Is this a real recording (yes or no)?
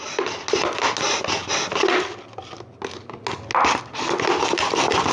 yes